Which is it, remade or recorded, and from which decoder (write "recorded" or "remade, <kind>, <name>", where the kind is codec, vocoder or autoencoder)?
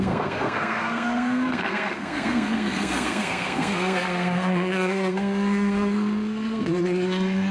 remade, codec, SNAC